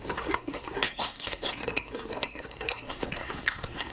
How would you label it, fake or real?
fake